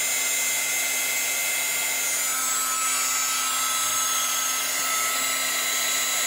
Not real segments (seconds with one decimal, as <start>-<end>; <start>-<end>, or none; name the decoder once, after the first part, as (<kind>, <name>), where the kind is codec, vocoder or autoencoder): 3.9-4.8 (vocoder, BigVGAN v2)